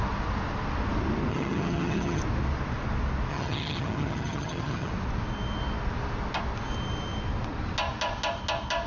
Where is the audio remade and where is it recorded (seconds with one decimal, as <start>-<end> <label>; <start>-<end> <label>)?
0.0-1.3 recorded; 1.3-2.2 remade; 2.2-3.3 recorded; 3.3-4.9 remade; 4.9-8.9 recorded